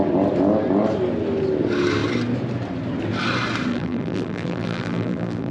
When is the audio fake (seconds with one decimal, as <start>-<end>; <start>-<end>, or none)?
3.7-5.5